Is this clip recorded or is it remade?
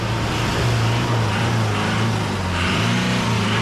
recorded